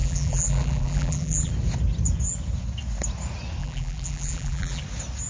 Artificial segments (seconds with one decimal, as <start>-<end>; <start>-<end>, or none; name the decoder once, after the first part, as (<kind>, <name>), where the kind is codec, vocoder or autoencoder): 0.0-1.5 (vocoder, BigVGAN v2); 3.6-4.8